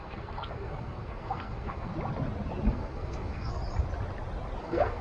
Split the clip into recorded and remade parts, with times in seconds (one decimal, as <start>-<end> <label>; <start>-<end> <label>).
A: 0.0-1.9 remade; 1.9-2.7 recorded; 2.7-3.6 remade; 3.6-4.6 recorded; 4.6-5.0 remade